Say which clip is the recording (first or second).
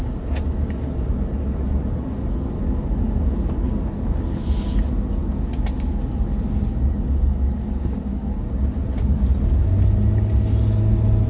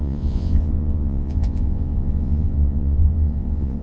first